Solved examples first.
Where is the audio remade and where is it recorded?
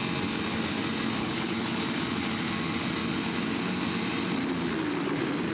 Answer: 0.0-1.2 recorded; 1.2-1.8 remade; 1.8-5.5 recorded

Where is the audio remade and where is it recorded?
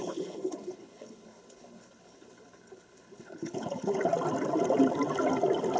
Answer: 0.0-4.1 remade; 4.1-5.8 recorded